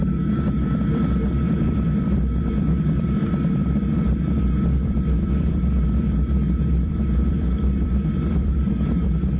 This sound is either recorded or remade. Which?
remade